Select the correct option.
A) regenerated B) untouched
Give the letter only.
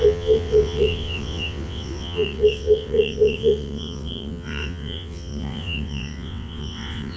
A